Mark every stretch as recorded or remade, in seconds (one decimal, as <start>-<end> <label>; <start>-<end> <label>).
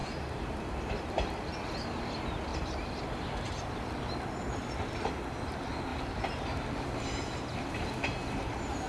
0.0-0.8 remade; 0.8-2.5 recorded; 2.5-3.0 remade; 3.0-5.9 recorded; 5.9-7.6 remade; 7.6-8.9 recorded